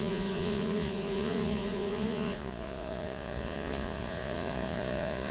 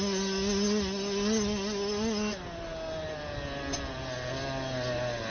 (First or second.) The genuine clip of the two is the second